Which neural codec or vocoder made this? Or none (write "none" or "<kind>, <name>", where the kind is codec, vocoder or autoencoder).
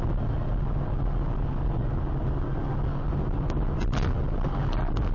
none